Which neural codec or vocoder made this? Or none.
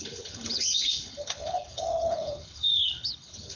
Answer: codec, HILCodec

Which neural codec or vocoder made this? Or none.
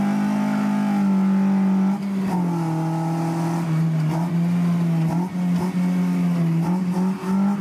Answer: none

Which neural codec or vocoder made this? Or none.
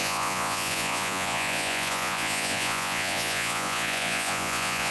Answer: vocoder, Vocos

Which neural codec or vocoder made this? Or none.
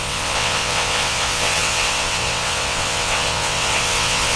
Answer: vocoder, WaveNeXt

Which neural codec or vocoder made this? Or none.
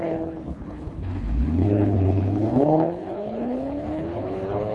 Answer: codec, HILCodec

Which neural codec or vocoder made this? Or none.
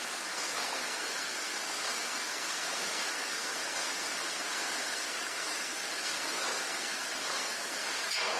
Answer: codec, SNAC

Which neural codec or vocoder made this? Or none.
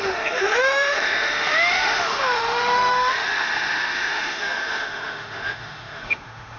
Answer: autoencoder, DAC-VAE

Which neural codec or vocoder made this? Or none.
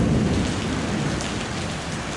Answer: none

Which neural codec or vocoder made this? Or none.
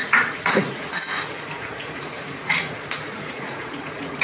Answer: vocoder, Vocos